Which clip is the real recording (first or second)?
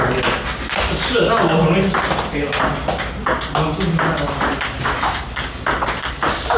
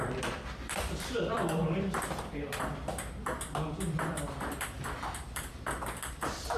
first